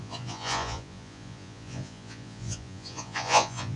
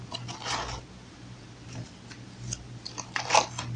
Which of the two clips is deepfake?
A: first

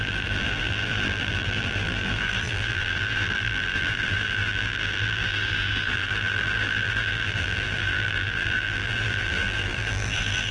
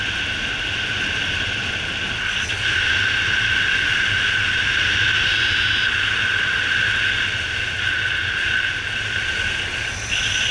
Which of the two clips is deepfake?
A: first